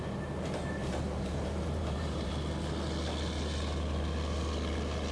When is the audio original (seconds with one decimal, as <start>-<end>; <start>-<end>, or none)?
0.0-0.8; 2.3-5.1